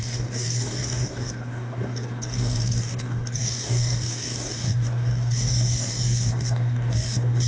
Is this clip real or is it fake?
fake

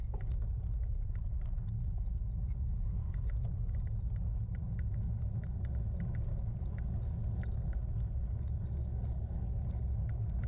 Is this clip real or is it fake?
real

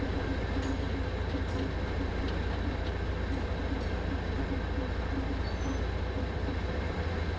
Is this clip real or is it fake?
real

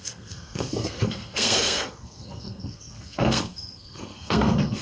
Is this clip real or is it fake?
fake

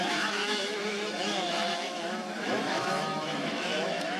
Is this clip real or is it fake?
fake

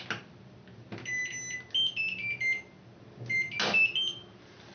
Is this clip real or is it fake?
real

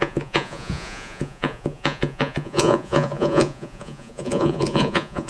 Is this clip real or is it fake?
fake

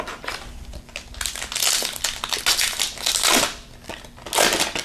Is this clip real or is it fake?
real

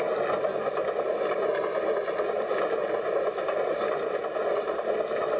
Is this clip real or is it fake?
real